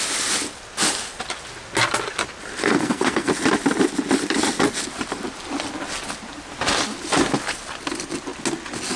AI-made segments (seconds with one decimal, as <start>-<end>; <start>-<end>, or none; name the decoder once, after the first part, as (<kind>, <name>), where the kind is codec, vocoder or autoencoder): 2.6-3.3 (codec, SNAC)